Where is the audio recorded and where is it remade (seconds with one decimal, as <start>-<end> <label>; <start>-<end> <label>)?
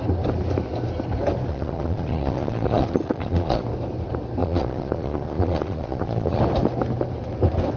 0.0-1.5 recorded; 1.5-3.6 remade; 3.6-4.4 recorded; 4.4-6.4 remade; 6.4-7.8 recorded